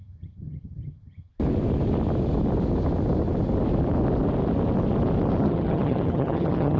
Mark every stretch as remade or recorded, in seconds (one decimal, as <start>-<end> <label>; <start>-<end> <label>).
0.0-1.3 remade; 1.3-5.4 recorded; 5.4-6.8 remade